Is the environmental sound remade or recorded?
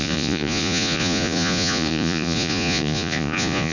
remade